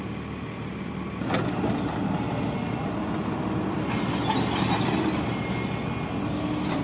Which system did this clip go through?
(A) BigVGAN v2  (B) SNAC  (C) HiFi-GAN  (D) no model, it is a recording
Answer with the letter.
D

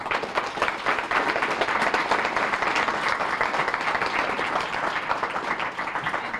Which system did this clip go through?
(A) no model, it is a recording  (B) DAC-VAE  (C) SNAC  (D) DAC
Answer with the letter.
A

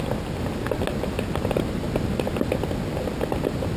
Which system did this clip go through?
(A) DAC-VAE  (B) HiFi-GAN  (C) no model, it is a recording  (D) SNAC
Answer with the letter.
C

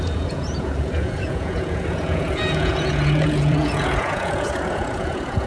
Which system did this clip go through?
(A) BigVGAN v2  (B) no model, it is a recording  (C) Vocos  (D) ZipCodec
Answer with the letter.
C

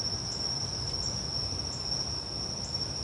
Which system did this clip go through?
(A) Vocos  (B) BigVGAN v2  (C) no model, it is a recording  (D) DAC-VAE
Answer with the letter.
C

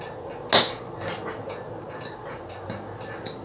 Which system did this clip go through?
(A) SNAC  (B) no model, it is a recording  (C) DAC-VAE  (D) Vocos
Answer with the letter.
B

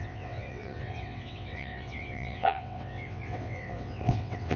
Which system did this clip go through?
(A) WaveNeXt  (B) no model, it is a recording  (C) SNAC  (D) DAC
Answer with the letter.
A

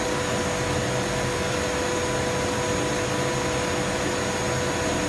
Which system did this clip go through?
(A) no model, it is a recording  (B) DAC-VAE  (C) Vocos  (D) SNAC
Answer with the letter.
A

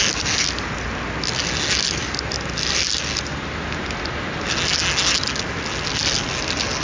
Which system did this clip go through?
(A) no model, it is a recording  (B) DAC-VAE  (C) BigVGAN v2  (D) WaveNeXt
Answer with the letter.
A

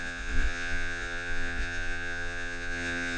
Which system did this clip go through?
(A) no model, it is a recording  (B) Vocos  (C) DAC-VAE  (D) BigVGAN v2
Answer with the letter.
B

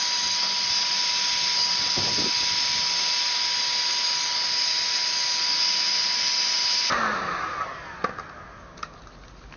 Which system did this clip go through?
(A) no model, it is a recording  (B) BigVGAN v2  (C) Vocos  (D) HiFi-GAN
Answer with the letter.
A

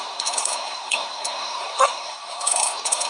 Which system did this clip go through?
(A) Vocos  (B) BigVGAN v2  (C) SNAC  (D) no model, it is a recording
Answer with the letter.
C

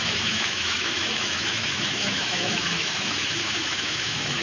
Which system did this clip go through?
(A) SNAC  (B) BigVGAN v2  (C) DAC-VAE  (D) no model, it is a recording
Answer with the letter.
C